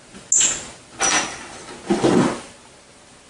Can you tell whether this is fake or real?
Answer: real